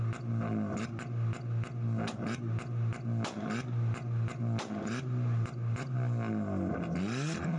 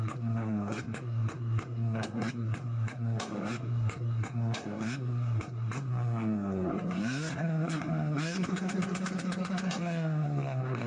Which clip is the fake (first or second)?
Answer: second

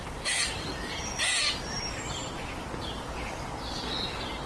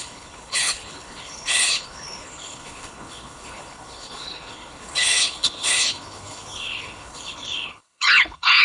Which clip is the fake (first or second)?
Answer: second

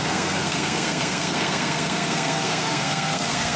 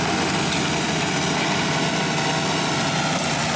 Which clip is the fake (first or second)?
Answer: first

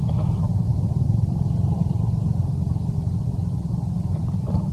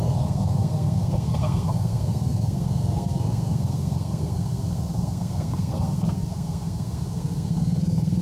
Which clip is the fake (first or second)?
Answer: second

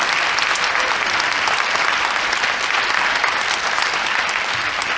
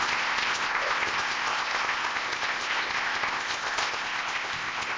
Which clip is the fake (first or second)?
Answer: second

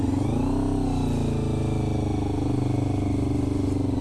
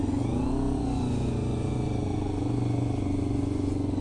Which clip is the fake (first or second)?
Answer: second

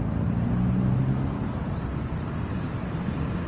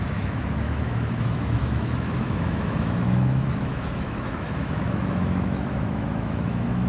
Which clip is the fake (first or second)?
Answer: second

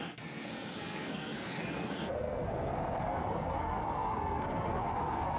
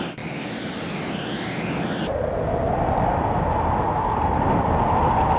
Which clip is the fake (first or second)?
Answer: first